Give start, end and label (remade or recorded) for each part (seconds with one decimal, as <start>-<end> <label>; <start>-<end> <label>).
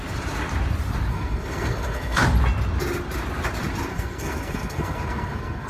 0.0-1.1 recorded; 1.1-2.2 remade; 2.2-3.9 recorded; 3.9-5.7 remade